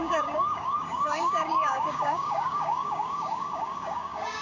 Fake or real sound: fake